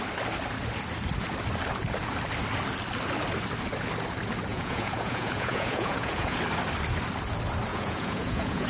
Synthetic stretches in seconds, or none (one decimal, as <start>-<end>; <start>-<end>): 4.5-6.4; 7.7-8.7